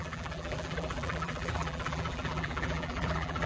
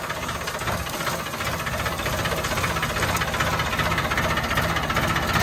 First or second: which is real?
second